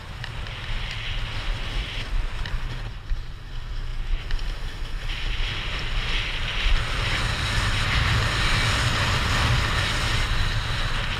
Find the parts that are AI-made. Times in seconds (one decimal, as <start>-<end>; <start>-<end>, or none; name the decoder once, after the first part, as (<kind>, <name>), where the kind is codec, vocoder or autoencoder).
none